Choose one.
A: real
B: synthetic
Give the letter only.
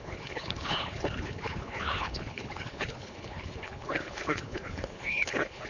B